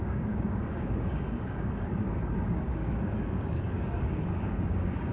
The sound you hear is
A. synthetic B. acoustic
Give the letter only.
A